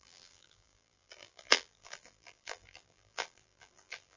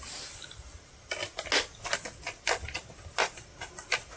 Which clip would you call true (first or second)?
second